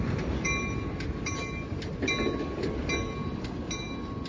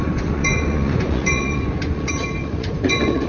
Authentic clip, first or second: first